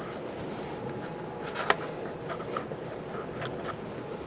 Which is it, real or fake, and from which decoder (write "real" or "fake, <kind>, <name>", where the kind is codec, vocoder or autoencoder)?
real